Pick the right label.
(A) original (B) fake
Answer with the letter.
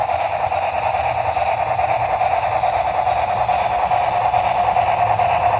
A